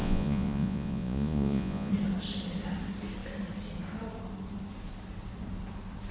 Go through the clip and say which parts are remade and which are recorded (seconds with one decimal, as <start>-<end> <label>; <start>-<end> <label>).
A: 0.0-1.9 remade; 1.9-6.1 recorded